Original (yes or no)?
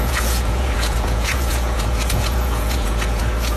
no